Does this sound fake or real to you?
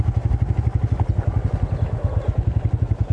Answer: real